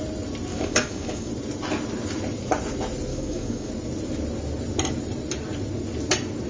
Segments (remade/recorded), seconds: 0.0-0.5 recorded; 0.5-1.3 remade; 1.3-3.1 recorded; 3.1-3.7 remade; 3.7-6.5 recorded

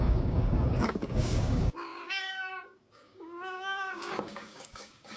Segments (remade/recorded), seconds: 0.0-5.2 remade

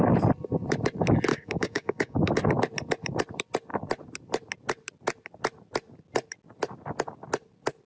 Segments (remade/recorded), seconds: 0.0-1.3 recorded; 1.3-2.3 remade; 2.3-7.9 recorded

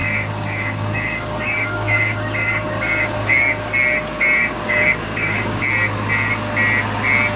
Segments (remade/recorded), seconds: 0.0-3.6 remade; 3.6-4.4 recorded; 4.4-5.6 remade; 5.6-7.4 recorded

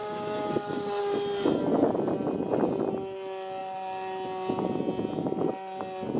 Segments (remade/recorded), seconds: 0.0-1.0 remade; 1.0-6.2 recorded